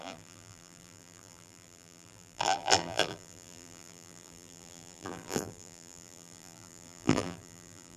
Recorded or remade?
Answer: remade